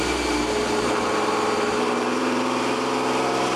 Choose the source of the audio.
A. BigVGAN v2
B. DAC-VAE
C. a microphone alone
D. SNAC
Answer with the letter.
A